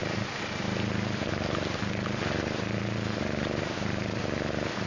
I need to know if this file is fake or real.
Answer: real